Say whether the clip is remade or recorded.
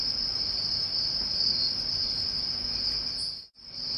remade